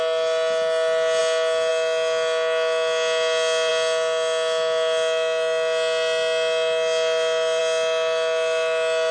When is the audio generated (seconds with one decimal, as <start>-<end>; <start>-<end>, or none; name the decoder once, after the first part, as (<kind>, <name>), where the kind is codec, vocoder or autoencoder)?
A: none